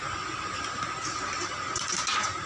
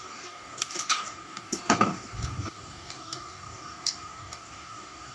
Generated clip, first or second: second